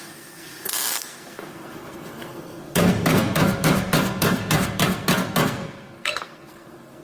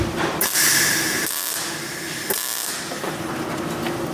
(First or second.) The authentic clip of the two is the second